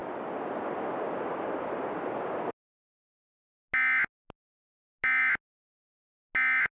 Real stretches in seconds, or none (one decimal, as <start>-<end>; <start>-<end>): 0.0-6.8